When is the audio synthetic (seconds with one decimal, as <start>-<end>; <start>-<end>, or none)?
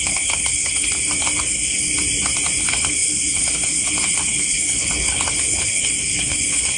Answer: 0.0-0.9; 1.4-1.9; 2.6-6.8